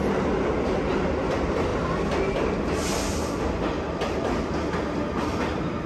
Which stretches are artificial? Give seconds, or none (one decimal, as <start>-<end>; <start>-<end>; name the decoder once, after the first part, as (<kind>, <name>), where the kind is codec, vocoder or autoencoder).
none